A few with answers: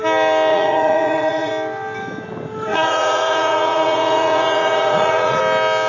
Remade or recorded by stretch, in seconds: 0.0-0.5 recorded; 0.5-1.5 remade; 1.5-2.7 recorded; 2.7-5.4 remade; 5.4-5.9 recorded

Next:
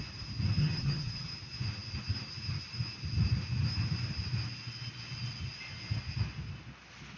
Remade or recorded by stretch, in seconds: 0.0-0.6 recorded; 0.6-1.3 remade; 1.3-7.2 recorded

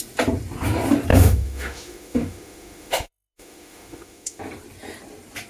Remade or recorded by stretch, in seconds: 0.0-1.1 recorded; 1.1-4.4 remade; 4.4-5.5 recorded

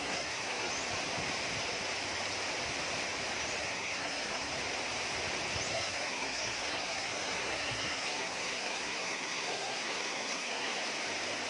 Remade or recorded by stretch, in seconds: 0.0-0.7 remade; 0.7-3.6 recorded; 3.6-4.5 remade; 4.5-5.7 recorded; 5.7-10.8 remade; 10.8-11.5 recorded